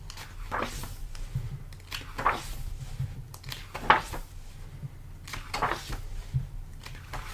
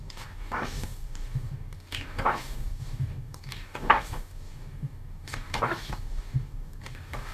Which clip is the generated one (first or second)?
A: second